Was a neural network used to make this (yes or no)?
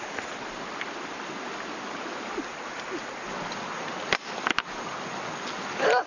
no